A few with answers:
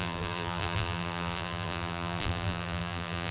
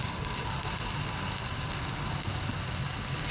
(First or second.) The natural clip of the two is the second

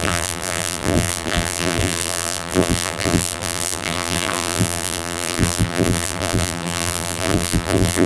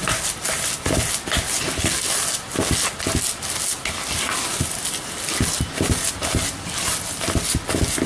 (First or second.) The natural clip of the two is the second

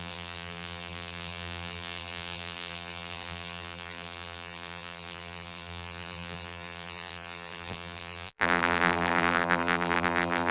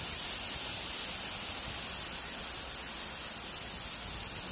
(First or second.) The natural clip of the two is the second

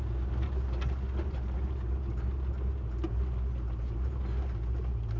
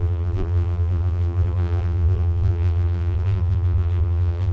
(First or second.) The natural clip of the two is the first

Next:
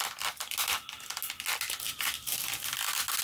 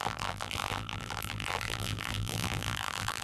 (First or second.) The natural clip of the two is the first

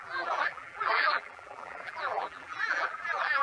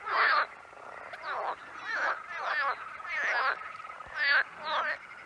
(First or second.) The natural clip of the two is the second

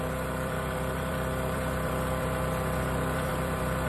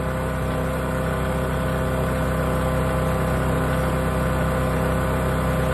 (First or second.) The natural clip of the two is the second